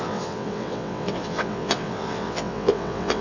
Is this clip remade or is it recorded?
remade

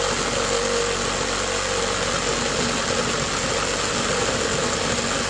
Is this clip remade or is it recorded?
recorded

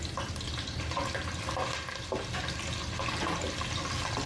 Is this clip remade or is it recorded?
recorded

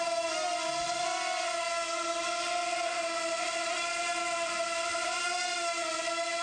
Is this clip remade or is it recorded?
recorded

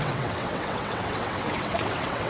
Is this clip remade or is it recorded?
remade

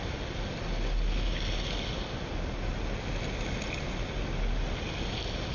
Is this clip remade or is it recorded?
recorded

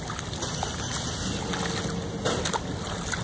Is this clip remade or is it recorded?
recorded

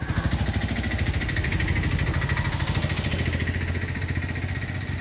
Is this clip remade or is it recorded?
recorded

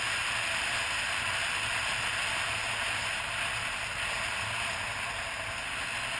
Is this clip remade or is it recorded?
recorded